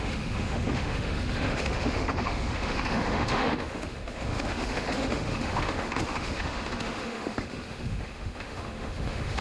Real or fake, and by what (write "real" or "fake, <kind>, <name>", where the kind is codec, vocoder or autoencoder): fake, autoencoder, DAC-VAE